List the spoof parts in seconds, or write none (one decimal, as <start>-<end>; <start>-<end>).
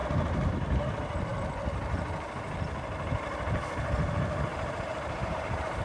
4.5-5.8